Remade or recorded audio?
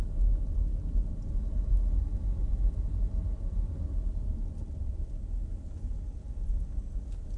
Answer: recorded